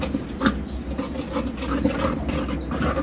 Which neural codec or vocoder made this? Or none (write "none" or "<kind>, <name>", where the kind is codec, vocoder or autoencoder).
none